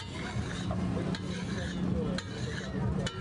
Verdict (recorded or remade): recorded